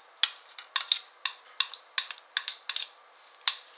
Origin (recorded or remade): recorded